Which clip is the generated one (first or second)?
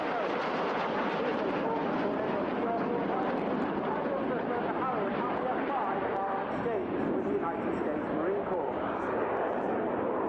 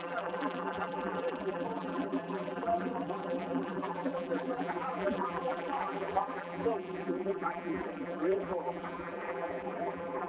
second